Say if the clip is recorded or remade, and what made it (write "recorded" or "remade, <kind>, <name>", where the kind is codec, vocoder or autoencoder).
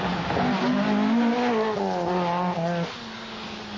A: recorded